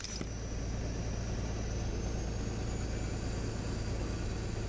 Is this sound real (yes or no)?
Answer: yes